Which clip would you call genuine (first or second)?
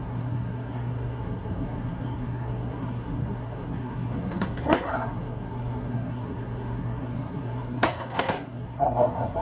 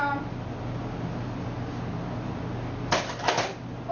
second